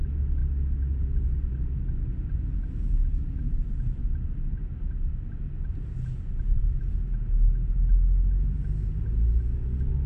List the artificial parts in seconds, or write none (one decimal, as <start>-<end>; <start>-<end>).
none